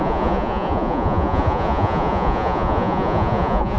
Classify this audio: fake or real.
fake